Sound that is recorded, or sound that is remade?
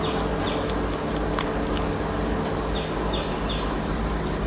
recorded